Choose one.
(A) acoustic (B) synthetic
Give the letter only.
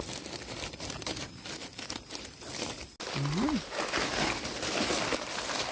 A